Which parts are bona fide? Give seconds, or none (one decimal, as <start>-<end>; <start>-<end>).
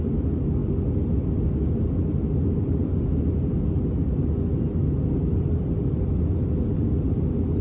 0.0-7.6